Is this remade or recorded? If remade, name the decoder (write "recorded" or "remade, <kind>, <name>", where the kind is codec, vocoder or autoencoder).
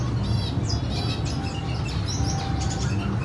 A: recorded